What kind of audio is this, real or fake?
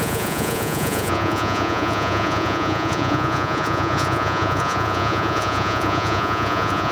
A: fake